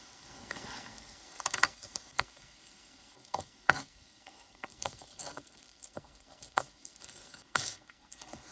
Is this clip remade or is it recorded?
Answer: remade